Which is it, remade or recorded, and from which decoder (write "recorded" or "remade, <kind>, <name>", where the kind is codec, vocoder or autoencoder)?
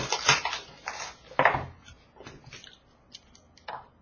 recorded